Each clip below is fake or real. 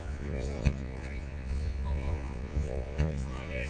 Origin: fake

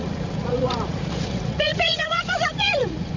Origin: fake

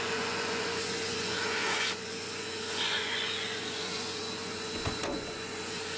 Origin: fake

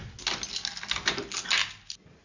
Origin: real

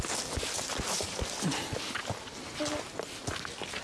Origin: real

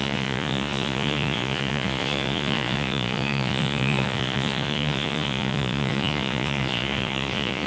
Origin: fake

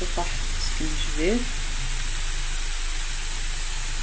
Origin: real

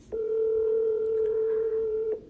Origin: fake